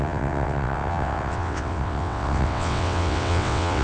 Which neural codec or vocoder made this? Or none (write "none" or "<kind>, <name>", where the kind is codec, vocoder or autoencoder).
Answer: vocoder, WaveNeXt